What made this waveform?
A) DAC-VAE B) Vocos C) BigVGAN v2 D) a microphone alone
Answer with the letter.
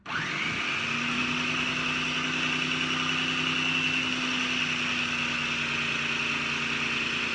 D